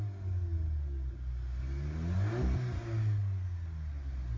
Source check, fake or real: real